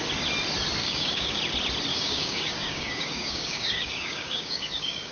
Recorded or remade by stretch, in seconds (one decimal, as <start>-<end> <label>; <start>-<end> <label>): 0.0-0.8 recorded; 0.8-1.4 remade; 1.4-1.9 recorded; 1.9-5.1 remade